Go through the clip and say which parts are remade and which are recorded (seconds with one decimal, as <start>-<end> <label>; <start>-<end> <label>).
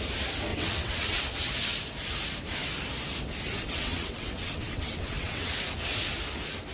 0.0-0.5 recorded; 0.5-1.2 remade; 1.2-3.6 recorded; 3.6-5.5 remade; 5.5-6.7 recorded